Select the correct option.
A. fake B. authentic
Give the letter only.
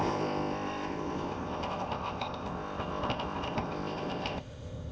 A